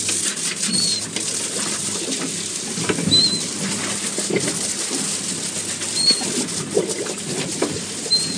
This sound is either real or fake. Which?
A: real